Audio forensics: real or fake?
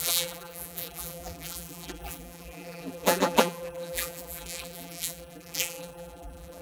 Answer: fake